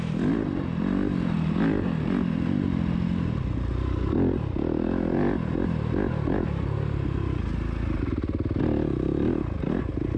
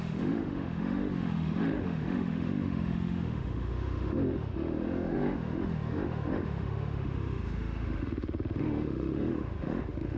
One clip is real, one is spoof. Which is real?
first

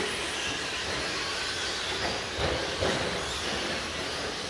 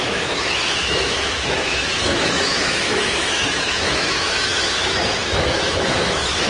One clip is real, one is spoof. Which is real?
first